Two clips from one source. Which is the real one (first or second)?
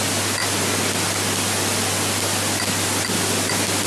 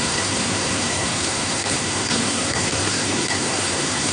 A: first